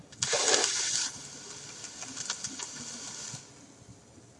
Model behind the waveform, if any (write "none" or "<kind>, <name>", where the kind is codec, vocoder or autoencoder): none